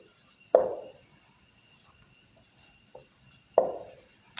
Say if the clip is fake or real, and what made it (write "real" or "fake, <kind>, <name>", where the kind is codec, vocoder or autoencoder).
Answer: fake, vocoder, BigVGAN v2